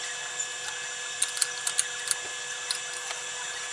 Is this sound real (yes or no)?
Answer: yes